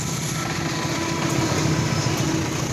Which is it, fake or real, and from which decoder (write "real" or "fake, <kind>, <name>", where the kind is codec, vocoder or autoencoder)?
real